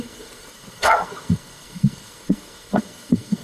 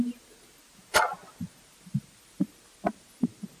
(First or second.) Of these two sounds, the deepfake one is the first